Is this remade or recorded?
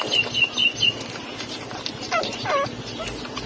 recorded